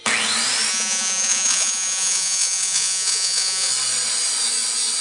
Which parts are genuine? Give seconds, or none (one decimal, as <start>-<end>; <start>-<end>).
0.0-0.7; 3.7-5.0